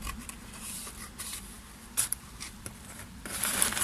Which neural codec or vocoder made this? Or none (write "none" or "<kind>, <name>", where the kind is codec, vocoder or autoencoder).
vocoder, BigVGAN v2